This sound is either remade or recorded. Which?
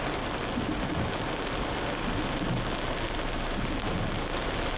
recorded